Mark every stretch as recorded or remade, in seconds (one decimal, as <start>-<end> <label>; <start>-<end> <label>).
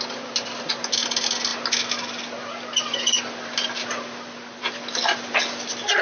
0.0-6.0 recorded